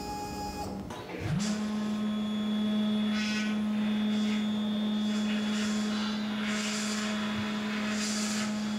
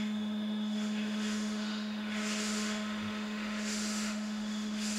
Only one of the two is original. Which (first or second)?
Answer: first